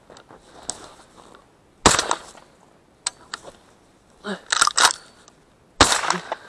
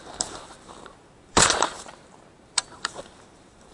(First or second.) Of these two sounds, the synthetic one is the second